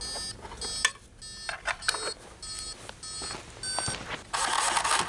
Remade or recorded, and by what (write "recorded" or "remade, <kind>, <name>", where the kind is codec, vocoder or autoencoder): recorded